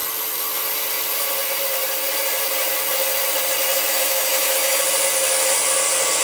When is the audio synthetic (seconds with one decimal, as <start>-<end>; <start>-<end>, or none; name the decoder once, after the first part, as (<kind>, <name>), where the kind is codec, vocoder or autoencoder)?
3.9-4.8 (autoencoder, DAC-VAE)